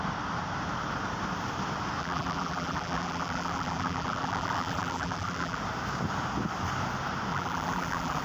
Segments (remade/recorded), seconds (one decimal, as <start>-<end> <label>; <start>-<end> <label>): 0.0-2.0 recorded; 2.0-5.6 remade; 5.6-7.3 recorded; 7.3-8.2 remade